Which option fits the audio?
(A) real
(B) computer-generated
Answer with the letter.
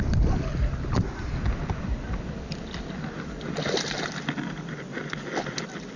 A